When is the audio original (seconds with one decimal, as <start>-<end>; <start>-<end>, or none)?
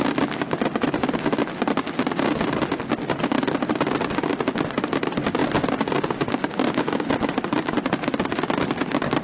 0.0-9.2